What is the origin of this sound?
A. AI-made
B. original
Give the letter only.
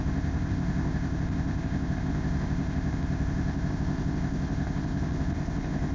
A